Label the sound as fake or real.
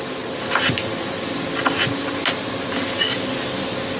real